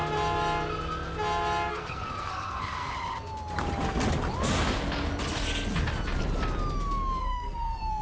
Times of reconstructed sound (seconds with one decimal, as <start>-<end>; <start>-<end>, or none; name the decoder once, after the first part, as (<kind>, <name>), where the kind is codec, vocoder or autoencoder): 1.7-2.9 (codec, SNAC); 7.2-8.0